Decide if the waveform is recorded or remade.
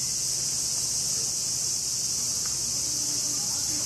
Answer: recorded